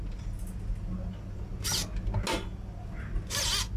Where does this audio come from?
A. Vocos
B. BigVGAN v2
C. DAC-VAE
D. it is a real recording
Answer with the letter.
D